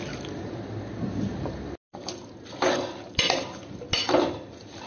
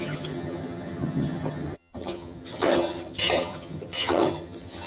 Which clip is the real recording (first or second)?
first